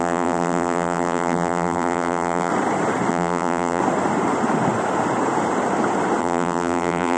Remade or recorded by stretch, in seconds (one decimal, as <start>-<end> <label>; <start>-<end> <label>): 0.0-2.5 remade; 2.5-3.1 recorded; 3.1-3.8 remade; 3.8-6.2 recorded; 6.2-7.2 remade

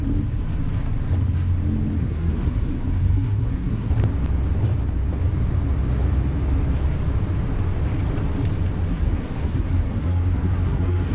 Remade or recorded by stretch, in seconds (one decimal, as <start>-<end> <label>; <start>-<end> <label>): 0.0-2.0 recorded; 2.0-4.0 remade; 4.0-8.9 recorded; 8.9-11.1 remade